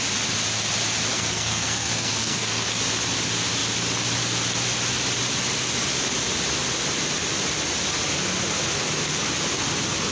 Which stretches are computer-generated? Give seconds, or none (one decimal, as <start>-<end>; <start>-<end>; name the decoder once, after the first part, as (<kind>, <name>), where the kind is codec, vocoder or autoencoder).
1.1-2.8 (codec, SNAC)